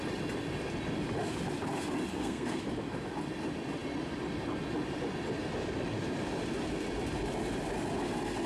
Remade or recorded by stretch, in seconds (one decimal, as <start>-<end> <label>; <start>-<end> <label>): 0.0-2.1 recorded; 2.1-2.6 remade; 2.6-8.5 recorded